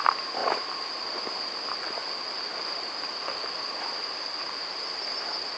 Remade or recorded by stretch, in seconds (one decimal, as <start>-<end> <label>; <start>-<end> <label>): 0.0-5.6 recorded